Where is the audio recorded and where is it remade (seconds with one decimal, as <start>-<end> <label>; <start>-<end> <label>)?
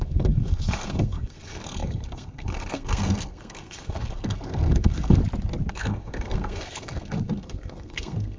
0.0-5.2 remade; 5.2-5.7 recorded; 5.7-8.4 remade